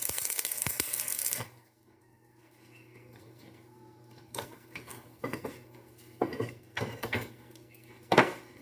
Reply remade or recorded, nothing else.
remade